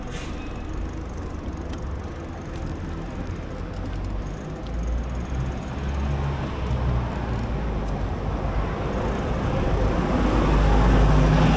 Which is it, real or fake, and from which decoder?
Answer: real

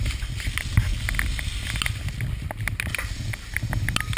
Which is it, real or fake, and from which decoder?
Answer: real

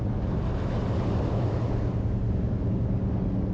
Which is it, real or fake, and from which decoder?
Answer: real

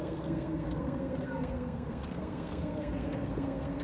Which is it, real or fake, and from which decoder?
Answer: fake, codec, SNAC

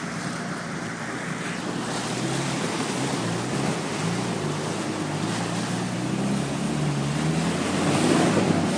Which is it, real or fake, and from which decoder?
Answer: real